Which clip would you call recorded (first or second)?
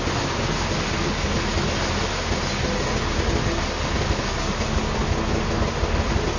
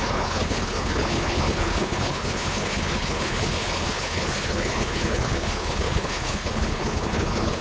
first